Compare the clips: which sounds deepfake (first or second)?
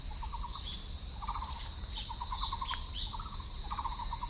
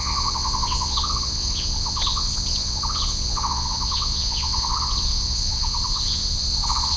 second